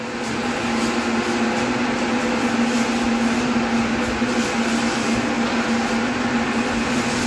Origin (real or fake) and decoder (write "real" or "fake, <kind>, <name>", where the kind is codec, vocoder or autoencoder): real